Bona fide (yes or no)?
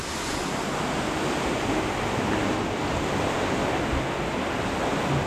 yes